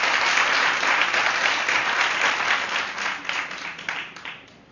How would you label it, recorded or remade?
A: recorded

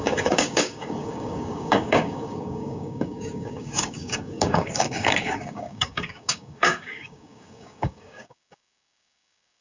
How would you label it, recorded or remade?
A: remade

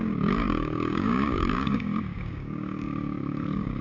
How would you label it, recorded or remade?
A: remade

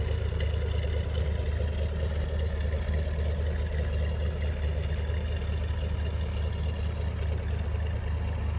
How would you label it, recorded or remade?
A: recorded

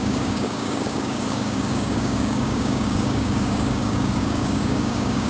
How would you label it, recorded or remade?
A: remade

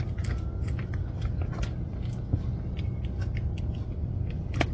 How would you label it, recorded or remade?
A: recorded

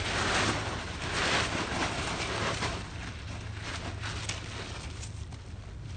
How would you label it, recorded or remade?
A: recorded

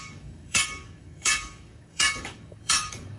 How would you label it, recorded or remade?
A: remade